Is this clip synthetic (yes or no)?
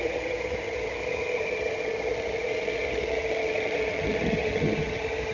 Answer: yes